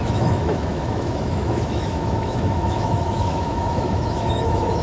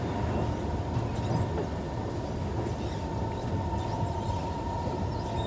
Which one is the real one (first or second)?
second